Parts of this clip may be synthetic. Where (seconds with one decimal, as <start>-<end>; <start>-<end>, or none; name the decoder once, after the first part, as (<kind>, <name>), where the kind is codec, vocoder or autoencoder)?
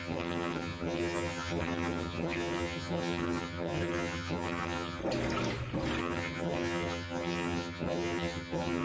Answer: 0.0-5.0 (vocoder, HiFi-GAN); 6.0-8.8